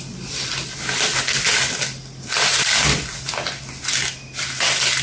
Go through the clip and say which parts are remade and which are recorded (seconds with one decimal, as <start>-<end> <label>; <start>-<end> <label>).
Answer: 0.0-5.0 recorded